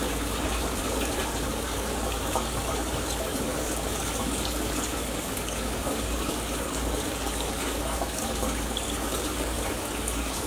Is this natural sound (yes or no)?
no